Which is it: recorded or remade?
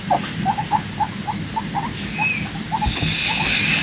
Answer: recorded